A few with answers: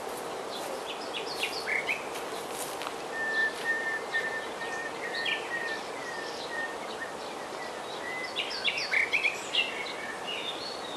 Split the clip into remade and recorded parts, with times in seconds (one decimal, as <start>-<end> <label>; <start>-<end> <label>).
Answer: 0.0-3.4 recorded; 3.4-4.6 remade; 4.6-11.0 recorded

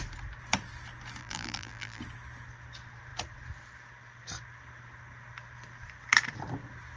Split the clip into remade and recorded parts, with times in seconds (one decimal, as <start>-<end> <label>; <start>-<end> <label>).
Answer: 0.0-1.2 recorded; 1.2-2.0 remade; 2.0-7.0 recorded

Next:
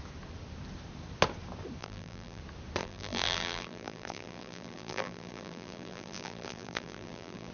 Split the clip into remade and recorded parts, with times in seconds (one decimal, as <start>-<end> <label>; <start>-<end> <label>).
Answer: 0.0-1.8 recorded; 1.8-2.4 remade; 2.4-2.8 recorded; 2.8-7.5 remade

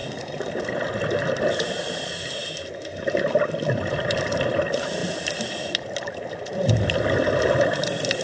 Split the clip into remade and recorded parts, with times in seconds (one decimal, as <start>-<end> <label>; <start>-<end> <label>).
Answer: 0.0-3.7 recorded; 3.7-8.2 remade

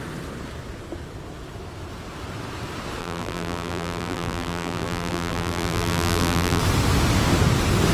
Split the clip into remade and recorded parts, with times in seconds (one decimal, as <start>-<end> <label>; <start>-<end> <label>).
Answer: 0.0-3.0 recorded; 3.0-6.6 remade; 6.6-7.9 recorded